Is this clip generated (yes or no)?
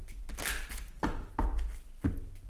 no